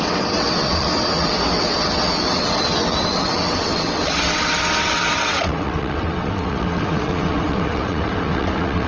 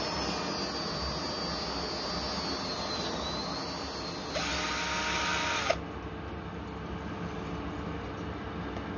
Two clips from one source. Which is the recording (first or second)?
second